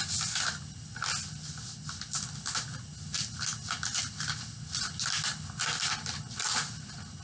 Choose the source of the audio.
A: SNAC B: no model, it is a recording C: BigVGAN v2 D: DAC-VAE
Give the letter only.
B